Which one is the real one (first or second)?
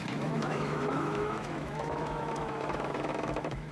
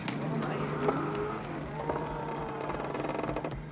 second